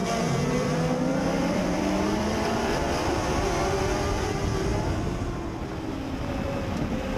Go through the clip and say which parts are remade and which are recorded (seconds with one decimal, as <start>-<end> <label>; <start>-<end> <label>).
0.0-3.4 remade; 3.4-7.2 recorded